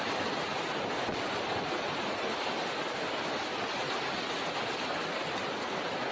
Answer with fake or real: real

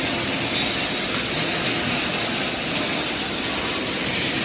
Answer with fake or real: real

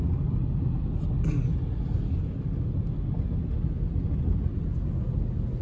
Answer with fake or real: real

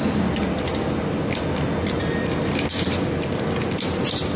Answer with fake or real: real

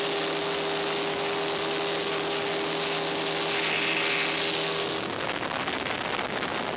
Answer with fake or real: real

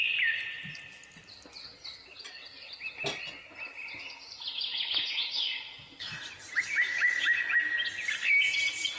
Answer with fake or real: real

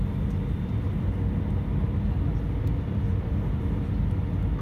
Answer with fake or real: real